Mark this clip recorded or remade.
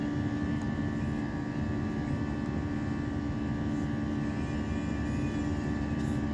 recorded